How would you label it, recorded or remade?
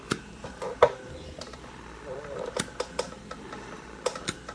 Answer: remade